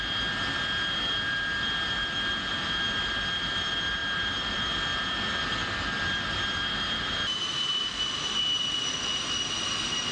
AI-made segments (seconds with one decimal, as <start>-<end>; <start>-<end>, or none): none